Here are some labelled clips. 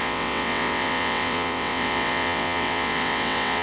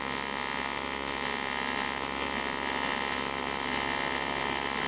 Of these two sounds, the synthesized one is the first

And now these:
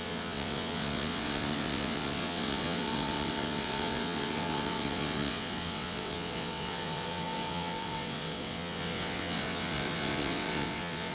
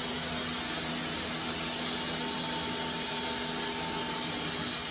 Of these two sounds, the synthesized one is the first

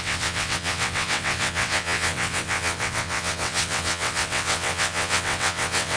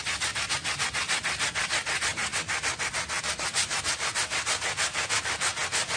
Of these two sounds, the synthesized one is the first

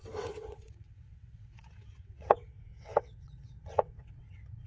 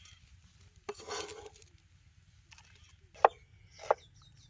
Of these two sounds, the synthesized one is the first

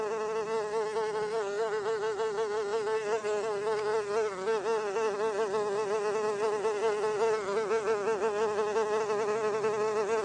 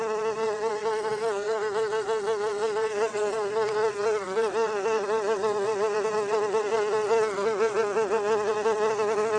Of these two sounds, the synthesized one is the second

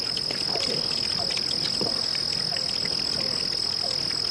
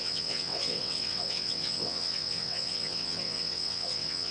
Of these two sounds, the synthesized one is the second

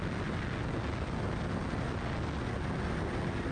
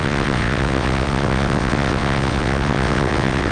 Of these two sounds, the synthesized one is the second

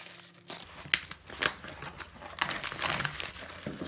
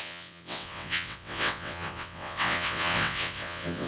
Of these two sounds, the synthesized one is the second